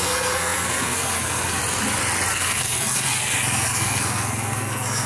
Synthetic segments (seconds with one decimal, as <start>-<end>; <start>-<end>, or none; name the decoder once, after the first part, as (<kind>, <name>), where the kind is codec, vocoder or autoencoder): 0.0-1.6 (codec, SNAC); 2.3-5.1